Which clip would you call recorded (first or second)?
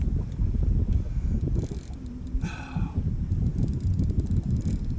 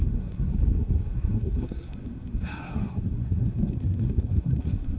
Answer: first